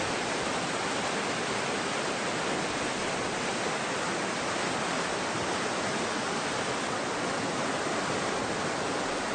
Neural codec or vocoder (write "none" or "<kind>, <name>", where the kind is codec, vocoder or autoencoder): none